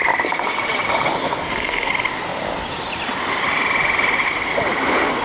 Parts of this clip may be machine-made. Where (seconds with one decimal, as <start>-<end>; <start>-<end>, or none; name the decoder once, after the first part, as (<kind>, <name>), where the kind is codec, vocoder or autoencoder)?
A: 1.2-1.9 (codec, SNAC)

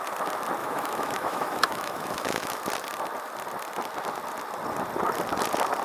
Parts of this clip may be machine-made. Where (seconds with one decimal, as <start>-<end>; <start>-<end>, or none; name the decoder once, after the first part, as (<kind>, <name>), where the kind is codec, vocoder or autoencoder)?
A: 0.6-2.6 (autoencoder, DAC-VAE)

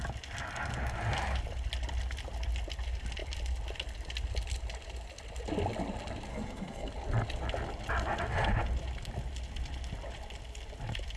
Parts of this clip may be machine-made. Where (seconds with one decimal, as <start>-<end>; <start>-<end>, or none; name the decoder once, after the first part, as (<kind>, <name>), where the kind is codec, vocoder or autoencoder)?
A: 6.3-6.9 (codec, SNAC)